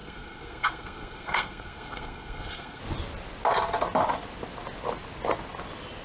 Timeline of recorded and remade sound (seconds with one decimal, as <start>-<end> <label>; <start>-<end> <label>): 0.0-2.8 remade; 2.8-6.0 recorded